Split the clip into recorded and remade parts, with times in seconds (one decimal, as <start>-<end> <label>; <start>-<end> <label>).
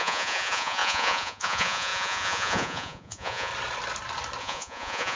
0.0-3.5 remade; 3.5-4.4 recorded; 4.4-5.2 remade